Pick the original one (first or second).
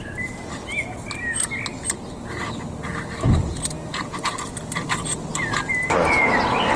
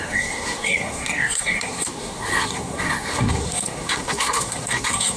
first